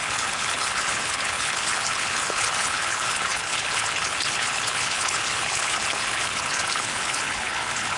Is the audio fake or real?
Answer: fake